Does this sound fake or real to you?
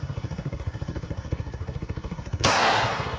fake